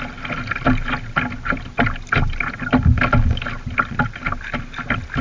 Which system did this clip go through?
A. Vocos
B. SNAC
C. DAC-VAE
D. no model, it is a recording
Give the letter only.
D